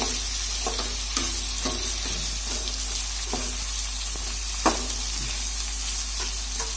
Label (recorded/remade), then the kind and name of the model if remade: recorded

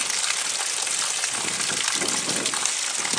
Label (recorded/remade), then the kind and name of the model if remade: recorded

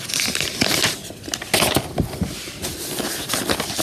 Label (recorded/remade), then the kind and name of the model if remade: recorded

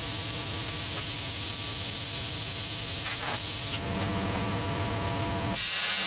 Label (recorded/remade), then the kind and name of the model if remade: recorded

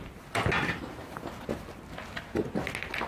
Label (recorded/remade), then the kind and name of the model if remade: recorded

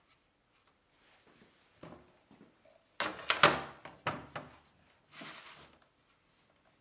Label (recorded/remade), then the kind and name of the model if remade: recorded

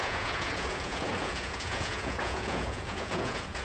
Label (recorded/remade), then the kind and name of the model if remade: remade, vocoder, Vocos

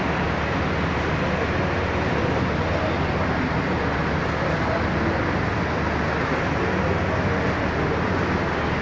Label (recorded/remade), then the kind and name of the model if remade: recorded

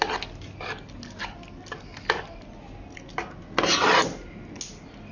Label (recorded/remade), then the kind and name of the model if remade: recorded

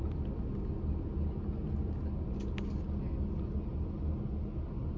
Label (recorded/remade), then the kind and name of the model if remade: recorded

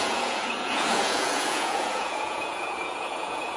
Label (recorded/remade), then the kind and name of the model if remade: remade, vocoder, Vocos